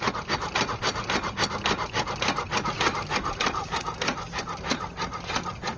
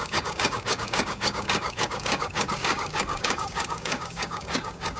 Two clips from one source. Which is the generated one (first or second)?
second